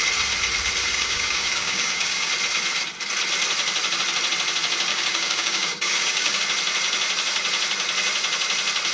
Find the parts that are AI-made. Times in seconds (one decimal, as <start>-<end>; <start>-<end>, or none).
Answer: 0.9-2.3; 4.9-6.4